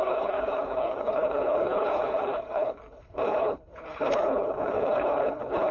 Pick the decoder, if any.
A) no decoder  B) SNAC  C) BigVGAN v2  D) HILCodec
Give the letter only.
D